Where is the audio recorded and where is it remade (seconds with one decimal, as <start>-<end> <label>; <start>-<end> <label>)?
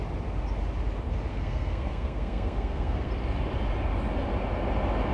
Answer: 0.0-1.3 recorded; 1.3-3.1 remade; 3.1-5.1 recorded